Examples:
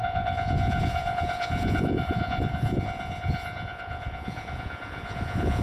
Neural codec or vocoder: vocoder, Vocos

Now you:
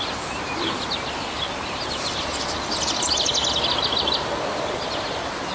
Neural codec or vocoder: none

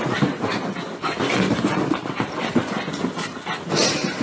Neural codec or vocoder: none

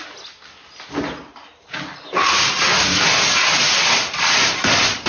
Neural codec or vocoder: none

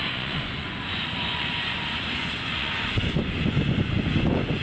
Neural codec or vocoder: vocoder, Vocos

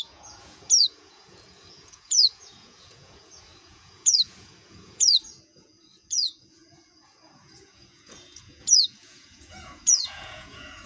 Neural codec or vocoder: vocoder, Vocos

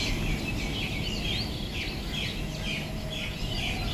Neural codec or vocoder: none